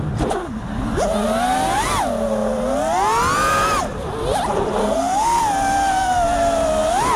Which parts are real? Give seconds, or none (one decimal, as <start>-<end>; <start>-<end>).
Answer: 0.0-4.8; 5.4-7.2